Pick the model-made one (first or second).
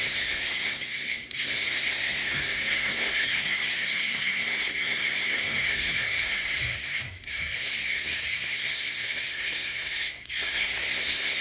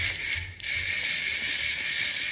first